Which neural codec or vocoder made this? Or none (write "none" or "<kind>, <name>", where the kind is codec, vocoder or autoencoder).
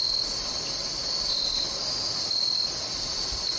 none